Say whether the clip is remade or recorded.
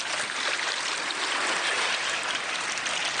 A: recorded